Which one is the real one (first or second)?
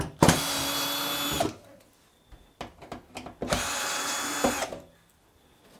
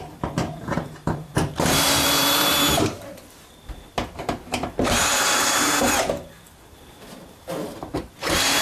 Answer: first